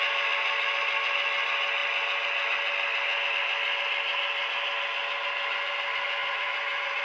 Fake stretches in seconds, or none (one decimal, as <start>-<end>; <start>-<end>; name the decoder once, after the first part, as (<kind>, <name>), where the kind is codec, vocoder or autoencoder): 6.2-7.0 (vocoder, BigVGAN v2)